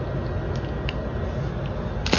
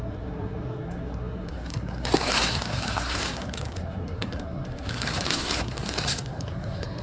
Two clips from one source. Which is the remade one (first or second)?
second